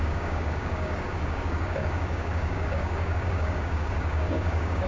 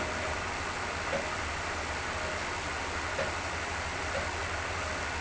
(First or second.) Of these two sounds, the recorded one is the second